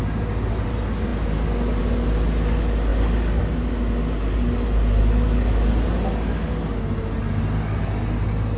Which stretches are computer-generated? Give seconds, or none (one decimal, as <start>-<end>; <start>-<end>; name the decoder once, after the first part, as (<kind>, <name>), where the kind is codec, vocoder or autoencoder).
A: none